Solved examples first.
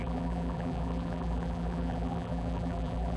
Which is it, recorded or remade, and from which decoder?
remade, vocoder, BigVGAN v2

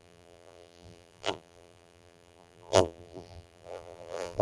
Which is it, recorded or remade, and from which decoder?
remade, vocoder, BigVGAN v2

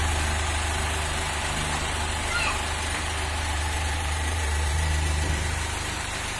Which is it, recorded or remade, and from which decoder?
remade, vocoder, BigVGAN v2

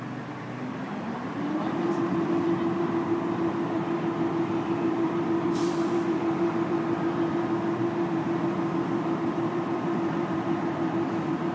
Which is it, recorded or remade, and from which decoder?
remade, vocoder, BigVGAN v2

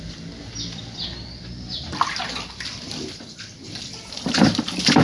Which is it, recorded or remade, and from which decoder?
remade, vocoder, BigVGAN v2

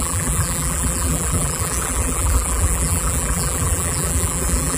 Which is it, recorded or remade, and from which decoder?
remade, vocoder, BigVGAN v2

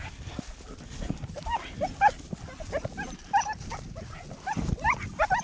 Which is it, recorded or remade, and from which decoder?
recorded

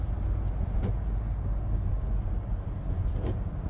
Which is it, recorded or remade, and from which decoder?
recorded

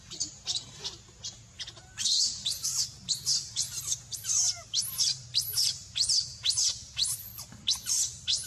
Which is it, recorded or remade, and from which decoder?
remade, vocoder, BigVGAN v2